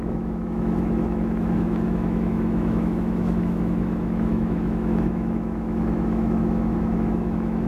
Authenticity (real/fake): fake